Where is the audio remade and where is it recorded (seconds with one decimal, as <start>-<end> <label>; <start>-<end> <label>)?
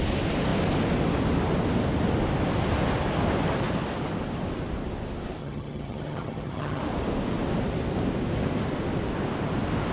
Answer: 0.0-5.4 recorded; 5.4-6.8 remade; 6.8-9.9 recorded